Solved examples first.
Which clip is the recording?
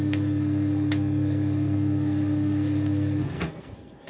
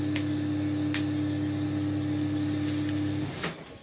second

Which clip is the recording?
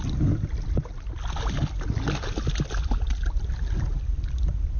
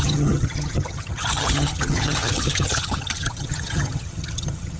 first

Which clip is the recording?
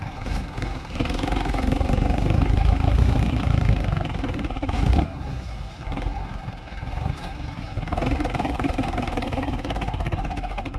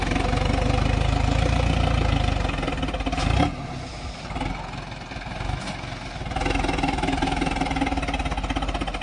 second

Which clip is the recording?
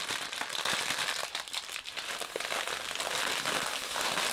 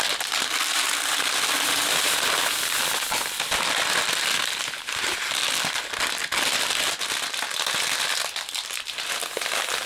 second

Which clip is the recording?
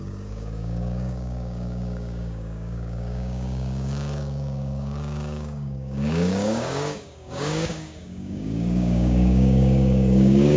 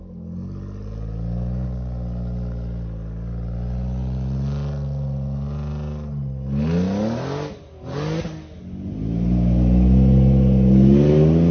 second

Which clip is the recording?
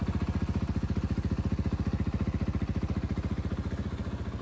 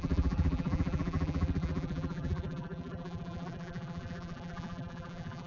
first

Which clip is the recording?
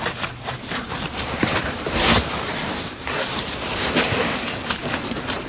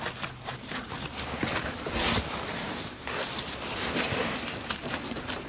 second